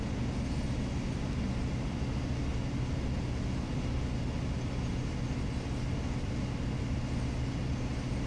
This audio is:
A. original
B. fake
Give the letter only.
A